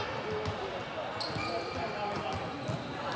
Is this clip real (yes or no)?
yes